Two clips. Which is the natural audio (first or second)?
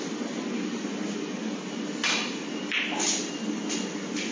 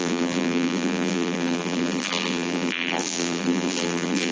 first